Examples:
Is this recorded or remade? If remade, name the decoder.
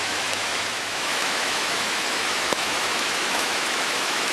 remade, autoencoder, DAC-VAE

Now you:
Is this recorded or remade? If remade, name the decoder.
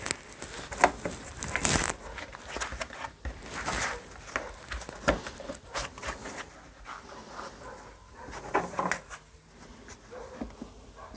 recorded